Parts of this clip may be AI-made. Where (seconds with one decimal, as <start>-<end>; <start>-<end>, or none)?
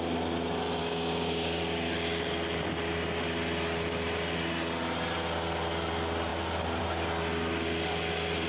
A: 0.8-1.6